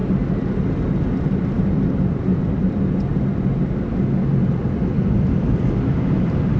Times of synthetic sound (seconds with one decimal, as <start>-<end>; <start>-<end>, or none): 0.0-3.4; 4.3-6.6

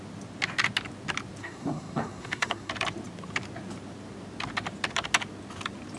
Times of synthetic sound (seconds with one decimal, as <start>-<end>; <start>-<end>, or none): 1.4-2.7

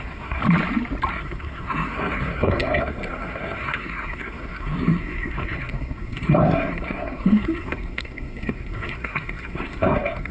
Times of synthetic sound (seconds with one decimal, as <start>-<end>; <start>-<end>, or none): 0.0-0.4; 1.1-10.3

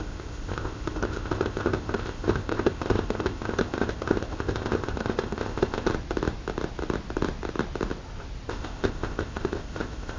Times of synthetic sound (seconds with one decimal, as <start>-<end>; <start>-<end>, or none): 0.0-5.9; 8.5-10.2

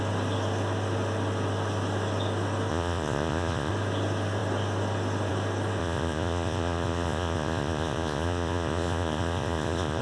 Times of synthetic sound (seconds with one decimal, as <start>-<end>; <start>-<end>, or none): 2.7-3.7; 5.8-10.0

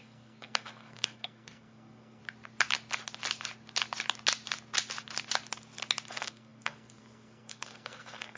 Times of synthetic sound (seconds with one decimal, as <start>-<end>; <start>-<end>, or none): 0.0-2.2; 6.1-8.4

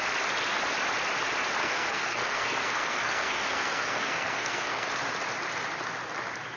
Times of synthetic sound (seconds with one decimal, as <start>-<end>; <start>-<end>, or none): 1.6-4.9